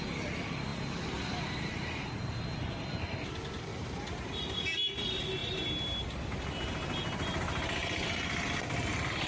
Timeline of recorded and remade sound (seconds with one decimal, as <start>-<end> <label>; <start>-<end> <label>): 0.0-3.7 recorded; 3.7-4.3 remade; 4.3-9.3 recorded